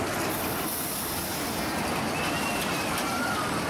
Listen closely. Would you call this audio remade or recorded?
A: recorded